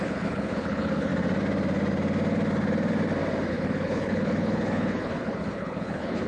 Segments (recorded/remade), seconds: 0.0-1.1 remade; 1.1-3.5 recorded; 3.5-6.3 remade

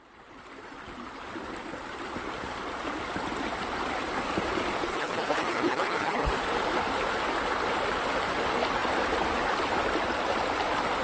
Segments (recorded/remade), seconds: 0.0-4.9 recorded; 4.9-6.3 remade; 6.3-11.0 recorded

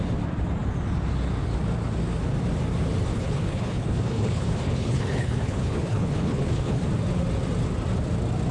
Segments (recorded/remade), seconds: 0.0-3.1 recorded; 3.1-6.8 remade; 6.8-8.5 recorded